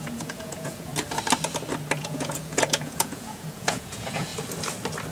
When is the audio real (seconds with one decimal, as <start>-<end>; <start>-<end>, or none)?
0.9-2.0; 4.3-5.1